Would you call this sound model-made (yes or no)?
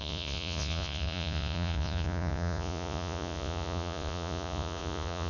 yes